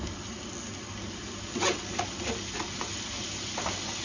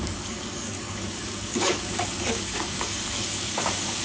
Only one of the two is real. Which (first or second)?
first